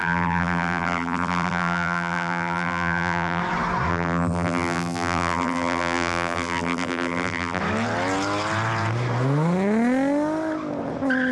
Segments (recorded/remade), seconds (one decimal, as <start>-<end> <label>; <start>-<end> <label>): 0.0-3.4 remade; 3.4-3.9 recorded; 3.9-7.6 remade; 7.6-11.3 recorded